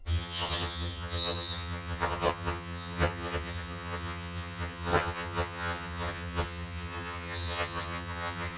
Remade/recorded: remade